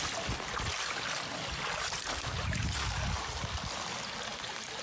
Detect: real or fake real